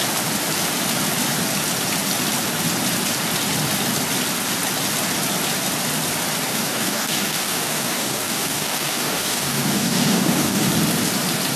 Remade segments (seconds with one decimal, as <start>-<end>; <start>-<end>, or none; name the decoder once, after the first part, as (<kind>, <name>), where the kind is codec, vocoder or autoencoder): 6.5-10.7 (codec, DAC)